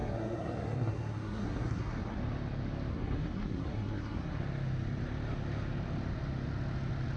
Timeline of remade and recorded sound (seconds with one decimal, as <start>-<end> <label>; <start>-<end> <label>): 0.0-2.2 remade; 2.2-2.9 recorded; 2.9-4.4 remade; 4.4-7.2 recorded